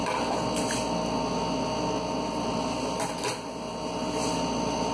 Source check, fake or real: real